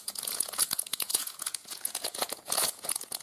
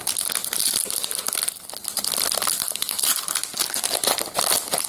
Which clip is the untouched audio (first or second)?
second